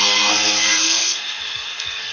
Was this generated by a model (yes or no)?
yes